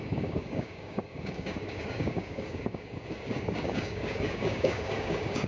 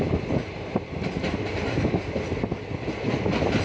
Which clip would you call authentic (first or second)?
second